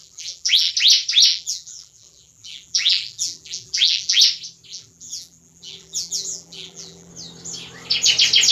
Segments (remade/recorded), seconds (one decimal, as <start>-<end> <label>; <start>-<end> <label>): 0.0-0.7 remade; 0.7-1.3 recorded; 1.3-4.2 remade; 4.2-4.7 recorded; 4.7-7.1 remade; 7.1-8.5 recorded